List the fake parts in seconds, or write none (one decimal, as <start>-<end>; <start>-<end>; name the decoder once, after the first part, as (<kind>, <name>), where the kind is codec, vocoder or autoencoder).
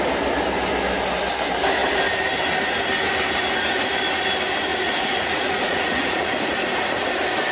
4.7-7.1 (vocoder, Vocos)